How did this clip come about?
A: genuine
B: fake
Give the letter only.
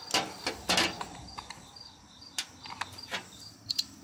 A